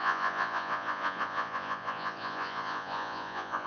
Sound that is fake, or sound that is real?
fake